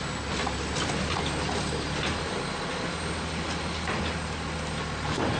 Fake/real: real